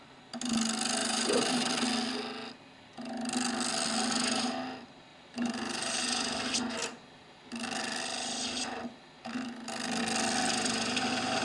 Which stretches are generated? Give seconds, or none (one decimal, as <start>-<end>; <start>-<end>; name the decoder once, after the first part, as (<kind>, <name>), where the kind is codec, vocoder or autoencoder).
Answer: 1.0-1.7 (vocoder, BigVGAN v2); 5.1-6.3